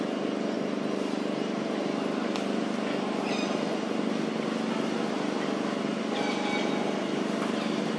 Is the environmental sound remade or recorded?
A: recorded